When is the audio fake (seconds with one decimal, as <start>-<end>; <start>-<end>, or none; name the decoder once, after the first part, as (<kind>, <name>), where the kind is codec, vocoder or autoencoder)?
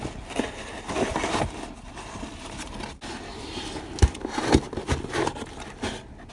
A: none